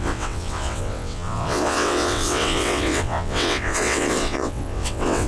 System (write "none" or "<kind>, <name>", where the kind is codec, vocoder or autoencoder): vocoder, WaveNeXt